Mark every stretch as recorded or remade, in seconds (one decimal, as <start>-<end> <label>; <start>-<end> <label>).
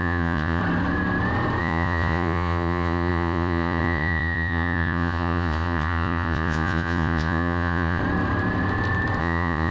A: 0.0-0.6 remade; 0.6-1.6 recorded; 1.6-8.0 remade; 8.0-9.2 recorded; 9.2-9.7 remade